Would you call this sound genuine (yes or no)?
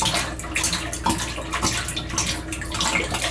yes